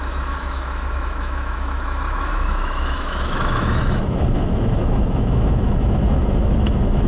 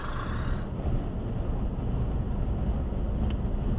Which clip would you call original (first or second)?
second